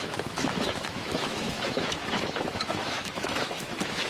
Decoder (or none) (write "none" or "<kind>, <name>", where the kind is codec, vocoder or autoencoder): autoencoder, DAC-VAE